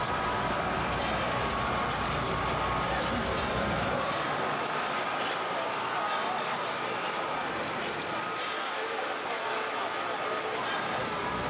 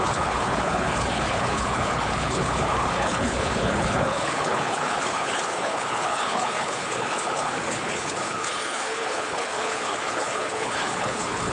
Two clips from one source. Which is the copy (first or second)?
second